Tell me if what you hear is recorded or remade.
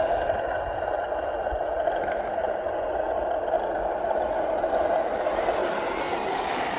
recorded